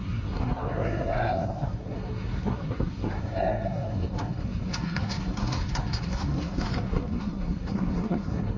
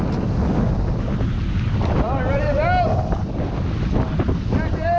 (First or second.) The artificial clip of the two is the first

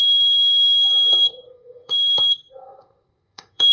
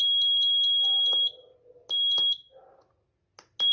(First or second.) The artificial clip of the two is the first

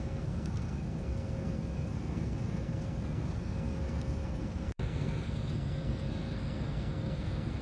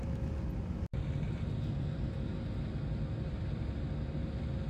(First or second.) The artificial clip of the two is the first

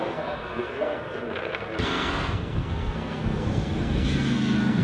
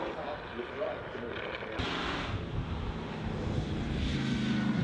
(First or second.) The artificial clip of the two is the first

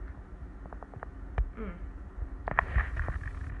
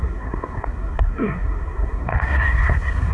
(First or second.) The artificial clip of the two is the second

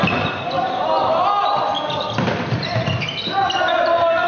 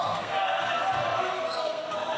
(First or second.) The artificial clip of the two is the second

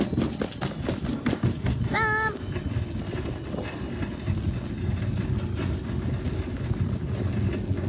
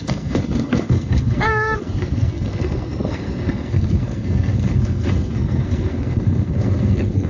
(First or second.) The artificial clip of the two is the second